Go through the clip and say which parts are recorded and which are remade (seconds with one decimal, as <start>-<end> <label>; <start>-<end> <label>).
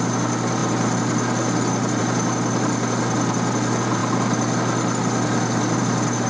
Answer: 0.0-6.3 recorded